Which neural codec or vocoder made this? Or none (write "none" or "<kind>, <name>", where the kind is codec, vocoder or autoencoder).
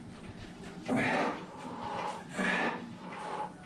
none